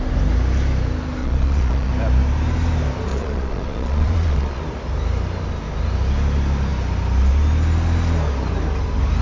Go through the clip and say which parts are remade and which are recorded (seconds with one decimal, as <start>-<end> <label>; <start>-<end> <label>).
0.0-1.2 recorded; 1.2-1.9 remade; 1.9-3.1 recorded; 3.1-4.6 remade; 4.6-9.2 recorded